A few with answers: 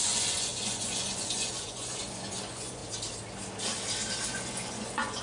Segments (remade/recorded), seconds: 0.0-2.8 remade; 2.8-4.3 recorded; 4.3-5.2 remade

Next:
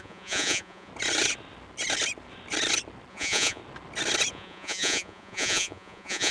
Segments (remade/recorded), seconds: 0.0-0.9 remade; 0.9-3.1 recorded; 3.1-3.6 remade; 3.6-4.3 recorded; 4.3-6.3 remade

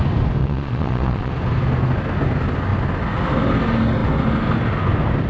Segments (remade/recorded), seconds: 0.0-0.4 recorded; 0.4-1.3 remade; 1.3-5.3 recorded

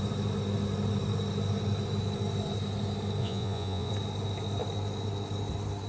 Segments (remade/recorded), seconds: 0.0-3.2 recorded; 3.2-3.9 remade; 3.9-5.9 recorded